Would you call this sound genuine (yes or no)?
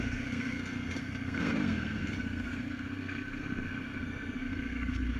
no